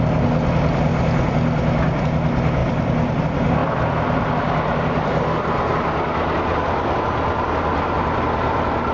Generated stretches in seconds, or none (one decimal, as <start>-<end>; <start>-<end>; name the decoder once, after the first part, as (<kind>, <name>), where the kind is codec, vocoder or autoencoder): 2.6-3.2 (vocoder, BigVGAN v2); 3.6-4.3; 6.5-7.3